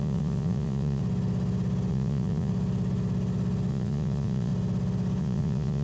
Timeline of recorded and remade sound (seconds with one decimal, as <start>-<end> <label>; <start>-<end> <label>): 0.0-1.0 remade; 1.0-1.9 recorded; 1.9-2.5 remade; 2.5-3.7 recorded; 3.7-4.5 remade; 4.5-5.2 recorded; 5.2-5.8 remade